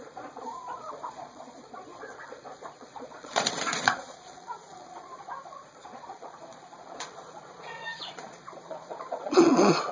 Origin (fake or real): fake